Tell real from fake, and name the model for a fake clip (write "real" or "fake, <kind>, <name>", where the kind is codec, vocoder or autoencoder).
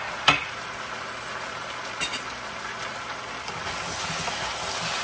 real